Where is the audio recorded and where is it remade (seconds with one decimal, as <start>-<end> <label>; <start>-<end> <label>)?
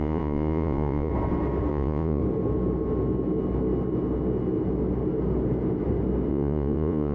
0.0-1.1 remade; 1.1-1.7 recorded; 1.7-2.2 remade; 2.2-6.3 recorded; 6.3-7.1 remade